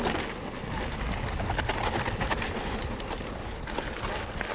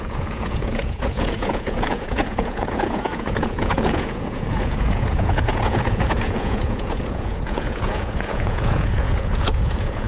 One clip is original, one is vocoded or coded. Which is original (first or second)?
first